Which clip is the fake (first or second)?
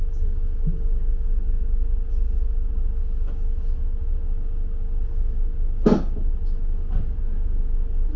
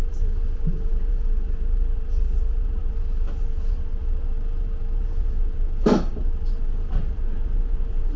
second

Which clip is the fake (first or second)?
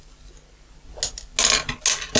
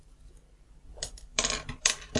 second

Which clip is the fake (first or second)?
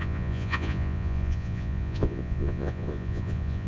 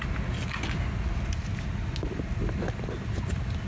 first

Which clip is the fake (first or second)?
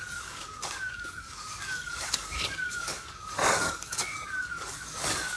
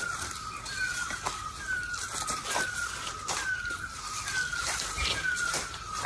first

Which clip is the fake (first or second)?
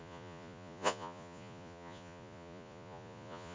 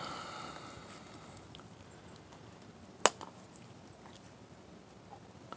first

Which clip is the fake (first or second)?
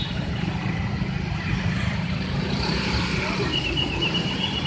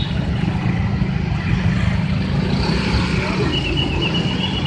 first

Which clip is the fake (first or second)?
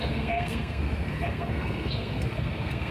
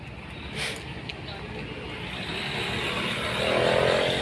first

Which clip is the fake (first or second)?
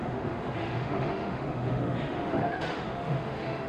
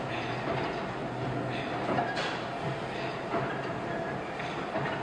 first